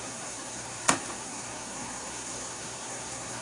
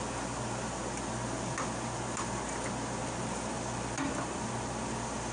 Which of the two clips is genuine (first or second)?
second